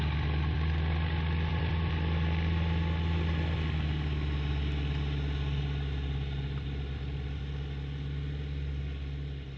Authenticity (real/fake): real